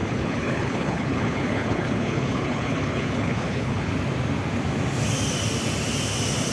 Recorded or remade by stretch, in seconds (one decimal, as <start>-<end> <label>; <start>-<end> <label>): 0.0-3.9 remade; 3.9-6.5 recorded